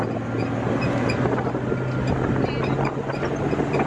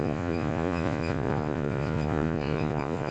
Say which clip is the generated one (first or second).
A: second